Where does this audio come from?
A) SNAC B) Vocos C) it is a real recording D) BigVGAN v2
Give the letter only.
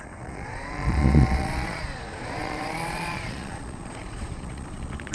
B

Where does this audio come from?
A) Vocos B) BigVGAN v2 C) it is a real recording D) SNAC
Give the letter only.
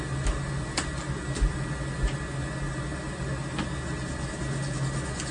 C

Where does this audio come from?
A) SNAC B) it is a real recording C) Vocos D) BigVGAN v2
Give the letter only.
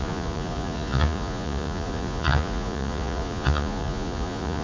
C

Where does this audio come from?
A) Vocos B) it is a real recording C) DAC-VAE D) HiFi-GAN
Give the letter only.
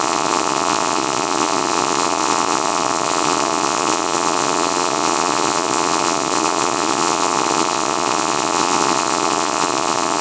A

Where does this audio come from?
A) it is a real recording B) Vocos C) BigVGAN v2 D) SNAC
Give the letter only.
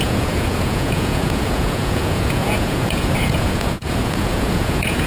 B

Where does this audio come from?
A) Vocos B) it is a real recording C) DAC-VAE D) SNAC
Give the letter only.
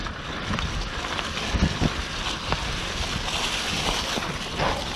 B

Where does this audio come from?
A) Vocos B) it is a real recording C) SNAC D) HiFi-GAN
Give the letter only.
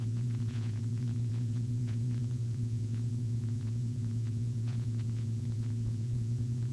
A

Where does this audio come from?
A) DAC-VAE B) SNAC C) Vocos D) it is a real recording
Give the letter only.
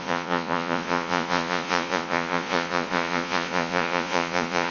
C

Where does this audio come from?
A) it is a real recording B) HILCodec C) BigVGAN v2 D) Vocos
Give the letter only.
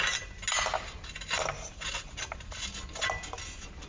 A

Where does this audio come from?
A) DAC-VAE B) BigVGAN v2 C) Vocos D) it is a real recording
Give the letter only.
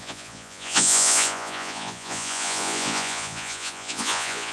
C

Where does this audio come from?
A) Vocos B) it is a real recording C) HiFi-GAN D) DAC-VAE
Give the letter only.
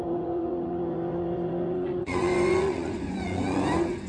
A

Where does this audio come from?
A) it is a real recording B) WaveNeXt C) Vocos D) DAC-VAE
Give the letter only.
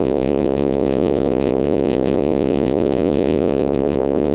C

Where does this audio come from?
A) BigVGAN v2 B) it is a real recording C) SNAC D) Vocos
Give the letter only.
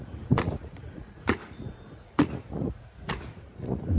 D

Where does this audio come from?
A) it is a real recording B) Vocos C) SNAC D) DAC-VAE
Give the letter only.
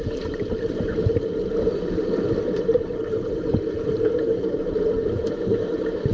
A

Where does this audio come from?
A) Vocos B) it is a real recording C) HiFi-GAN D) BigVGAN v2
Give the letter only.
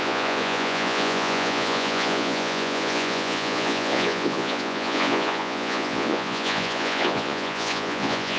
A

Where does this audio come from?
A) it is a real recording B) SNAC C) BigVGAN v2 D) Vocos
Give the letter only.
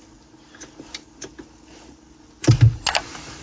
A